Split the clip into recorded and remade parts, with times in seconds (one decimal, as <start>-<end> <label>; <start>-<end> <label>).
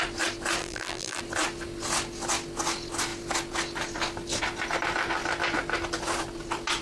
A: 0.0-0.6 recorded; 0.6-1.2 remade; 1.2-6.8 recorded